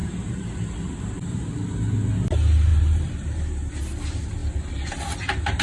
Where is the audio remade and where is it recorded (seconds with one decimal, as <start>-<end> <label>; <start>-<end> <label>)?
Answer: 0.0-1.5 remade; 1.5-2.7 recorded; 2.7-3.8 remade; 3.8-5.6 recorded